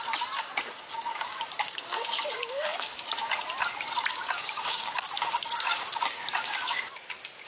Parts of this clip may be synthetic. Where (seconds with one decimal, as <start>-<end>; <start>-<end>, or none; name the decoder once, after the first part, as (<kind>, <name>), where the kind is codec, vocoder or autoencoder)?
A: 1.1-3.1 (codec, DAC); 4.1-6.8